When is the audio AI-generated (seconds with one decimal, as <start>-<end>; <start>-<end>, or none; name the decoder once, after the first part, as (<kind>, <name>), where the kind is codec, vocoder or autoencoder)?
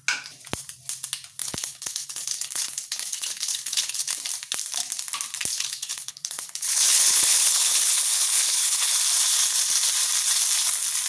1.4-4.1 (codec, HILCodec); 5.5-8.9